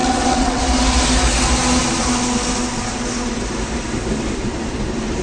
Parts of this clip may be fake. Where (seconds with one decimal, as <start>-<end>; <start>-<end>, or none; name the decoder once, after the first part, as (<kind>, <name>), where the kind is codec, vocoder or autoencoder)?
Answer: 0.0-0.6 (vocoder, WaveNeXt)